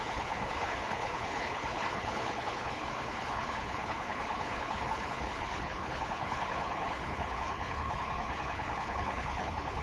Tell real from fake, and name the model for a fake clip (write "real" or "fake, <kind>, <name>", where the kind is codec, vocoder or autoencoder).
fake, codec, HILCodec